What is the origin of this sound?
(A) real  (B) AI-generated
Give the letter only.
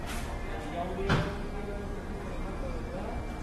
A